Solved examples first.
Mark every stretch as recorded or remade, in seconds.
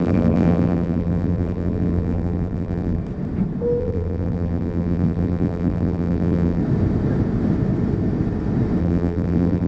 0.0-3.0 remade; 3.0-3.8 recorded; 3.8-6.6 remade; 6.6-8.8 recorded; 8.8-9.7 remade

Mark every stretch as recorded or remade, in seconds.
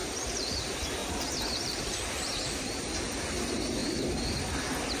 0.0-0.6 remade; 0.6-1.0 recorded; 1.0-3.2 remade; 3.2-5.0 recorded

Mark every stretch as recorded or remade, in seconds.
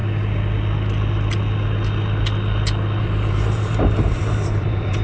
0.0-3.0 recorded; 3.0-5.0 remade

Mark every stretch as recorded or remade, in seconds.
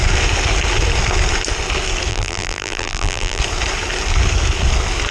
0.0-2.1 recorded; 2.1-3.4 remade; 3.4-5.1 recorded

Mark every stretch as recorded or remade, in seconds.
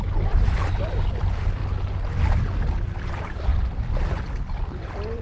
0.0-1.6 remade; 1.6-2.2 recorded; 2.2-3.5 remade; 3.5-4.4 recorded; 4.4-5.2 remade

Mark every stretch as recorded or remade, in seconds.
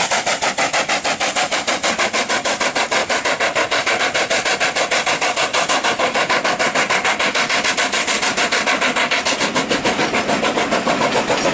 0.0-1.5 recorded; 1.5-2.1 remade; 2.1-3.0 recorded; 3.0-4.0 remade; 4.0-5.5 recorded; 5.5-7.7 remade; 7.7-11.5 recorded